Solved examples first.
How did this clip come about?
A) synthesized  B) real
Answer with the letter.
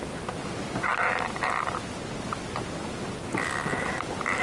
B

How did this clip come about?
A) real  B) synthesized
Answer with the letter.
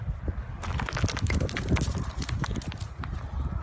A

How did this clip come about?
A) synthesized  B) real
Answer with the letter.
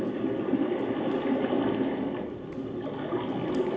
B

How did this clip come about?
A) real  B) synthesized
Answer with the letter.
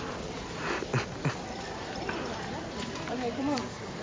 B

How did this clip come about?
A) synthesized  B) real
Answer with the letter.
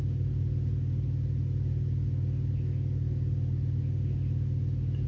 B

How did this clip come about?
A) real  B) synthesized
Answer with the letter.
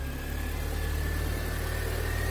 A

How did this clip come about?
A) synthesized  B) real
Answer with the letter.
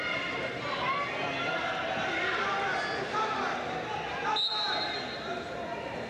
B